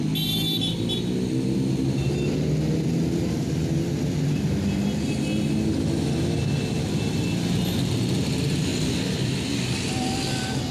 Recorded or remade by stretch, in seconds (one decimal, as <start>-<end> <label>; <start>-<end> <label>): 0.0-10.7 recorded